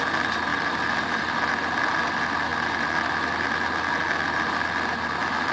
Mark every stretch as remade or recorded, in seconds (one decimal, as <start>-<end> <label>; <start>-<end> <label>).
0.0-5.5 recorded